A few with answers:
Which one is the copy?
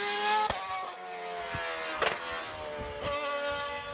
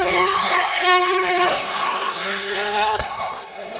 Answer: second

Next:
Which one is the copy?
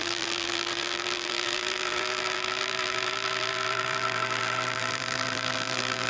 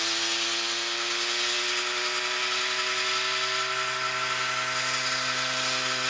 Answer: first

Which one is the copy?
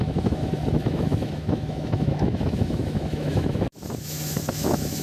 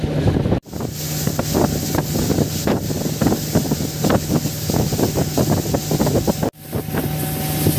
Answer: first